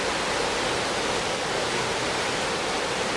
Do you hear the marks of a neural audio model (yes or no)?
no